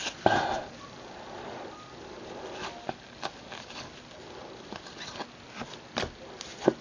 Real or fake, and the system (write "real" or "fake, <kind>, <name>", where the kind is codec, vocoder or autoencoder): real